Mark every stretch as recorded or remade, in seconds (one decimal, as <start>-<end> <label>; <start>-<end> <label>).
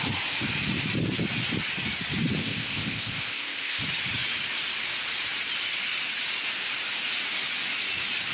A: 0.0-2.4 recorded; 2.4-3.8 remade; 3.8-8.3 recorded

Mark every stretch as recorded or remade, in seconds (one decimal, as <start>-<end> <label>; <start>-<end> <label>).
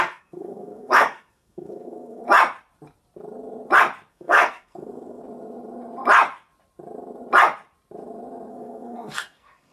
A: 0.0-2.2 remade; 2.2-4.1 recorded; 4.1-5.2 remade; 5.2-8.5 recorded; 8.5-9.7 remade